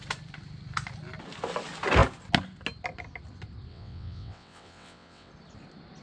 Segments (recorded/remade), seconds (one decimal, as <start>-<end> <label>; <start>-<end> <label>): 0.0-3.7 recorded; 3.7-5.3 remade; 5.3-6.0 recorded